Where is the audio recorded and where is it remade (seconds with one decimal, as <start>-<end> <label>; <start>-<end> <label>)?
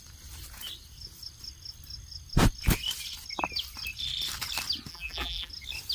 0.0-4.9 recorded; 4.9-5.5 remade; 5.5-5.9 recorded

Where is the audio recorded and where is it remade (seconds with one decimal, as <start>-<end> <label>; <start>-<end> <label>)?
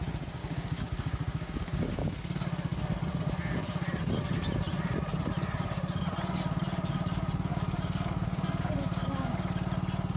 0.0-0.4 recorded; 0.4-2.1 remade; 2.1-7.5 recorded; 7.5-9.3 remade; 9.3-10.2 recorded